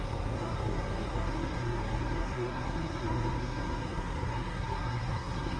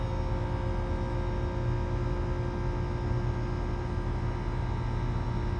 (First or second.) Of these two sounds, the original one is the second